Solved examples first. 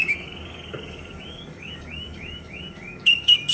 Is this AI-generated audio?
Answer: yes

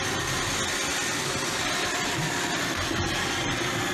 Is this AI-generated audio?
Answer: no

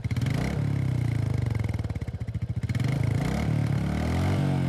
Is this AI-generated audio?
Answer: no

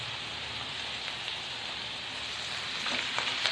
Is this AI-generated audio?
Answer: no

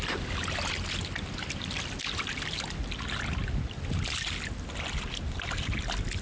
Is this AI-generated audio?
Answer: no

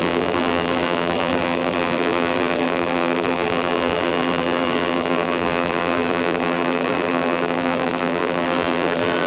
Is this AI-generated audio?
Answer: yes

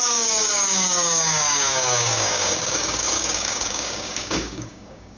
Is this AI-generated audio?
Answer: yes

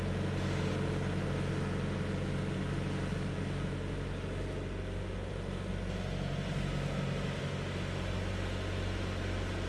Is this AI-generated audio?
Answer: no